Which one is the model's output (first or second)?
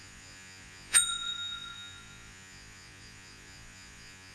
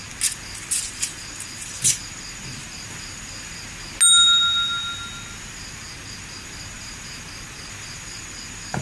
first